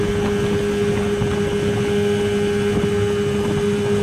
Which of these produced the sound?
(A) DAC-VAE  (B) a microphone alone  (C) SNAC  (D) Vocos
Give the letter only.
B